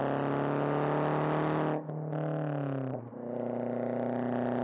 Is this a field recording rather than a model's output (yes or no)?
yes